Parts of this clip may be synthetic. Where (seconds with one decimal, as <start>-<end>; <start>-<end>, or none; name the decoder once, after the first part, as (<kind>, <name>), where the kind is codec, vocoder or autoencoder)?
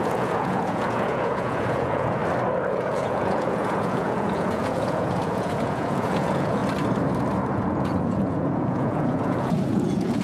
0.0-2.2 (vocoder, Vocos); 2.7-6.6; 7.5-10.2